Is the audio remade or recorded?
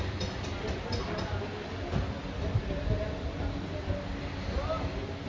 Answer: recorded